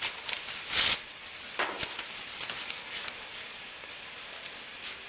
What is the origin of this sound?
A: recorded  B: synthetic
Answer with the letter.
A